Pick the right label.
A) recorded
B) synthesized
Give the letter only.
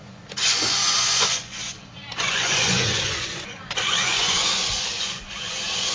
B